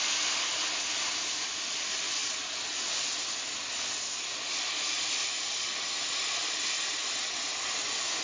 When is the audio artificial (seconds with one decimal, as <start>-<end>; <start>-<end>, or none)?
none